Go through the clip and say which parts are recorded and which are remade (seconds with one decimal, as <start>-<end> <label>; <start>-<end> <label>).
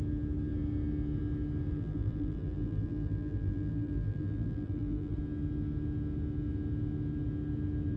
0.0-1.7 recorded; 1.7-5.2 remade; 5.2-8.0 recorded